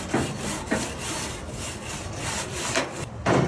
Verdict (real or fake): real